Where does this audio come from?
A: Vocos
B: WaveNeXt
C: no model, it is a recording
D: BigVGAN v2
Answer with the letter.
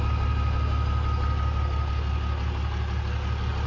C